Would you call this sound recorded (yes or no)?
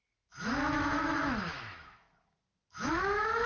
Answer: no